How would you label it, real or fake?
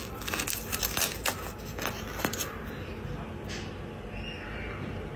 real